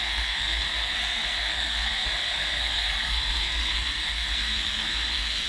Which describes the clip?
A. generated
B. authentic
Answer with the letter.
A